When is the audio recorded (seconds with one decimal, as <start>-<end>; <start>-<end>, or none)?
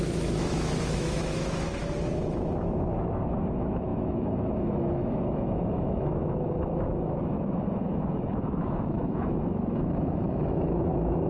none